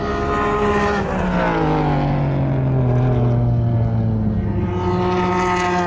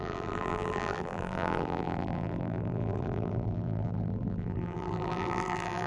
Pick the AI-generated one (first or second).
second